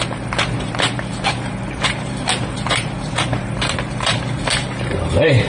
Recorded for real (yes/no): no